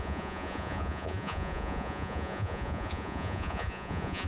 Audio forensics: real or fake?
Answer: fake